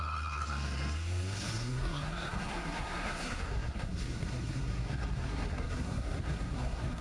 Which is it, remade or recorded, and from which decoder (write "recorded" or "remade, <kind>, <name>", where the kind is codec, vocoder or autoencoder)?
remade, codec, SNAC